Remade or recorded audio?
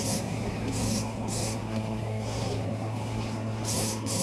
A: remade